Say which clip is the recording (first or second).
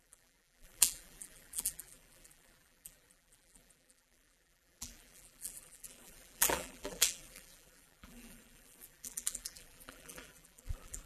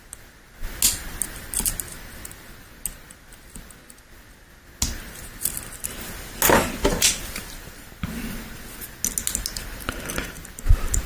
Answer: second